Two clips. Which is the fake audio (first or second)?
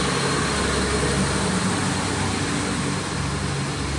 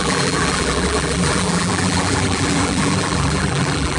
second